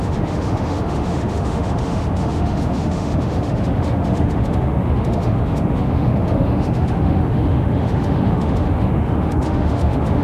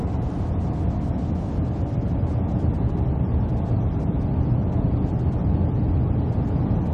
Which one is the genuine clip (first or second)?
second